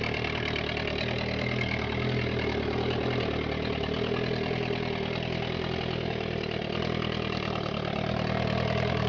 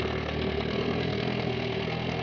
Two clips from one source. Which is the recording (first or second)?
first